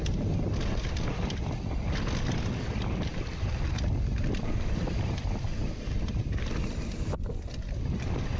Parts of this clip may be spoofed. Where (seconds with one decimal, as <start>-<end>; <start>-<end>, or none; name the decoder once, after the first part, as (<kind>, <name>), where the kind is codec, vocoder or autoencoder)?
none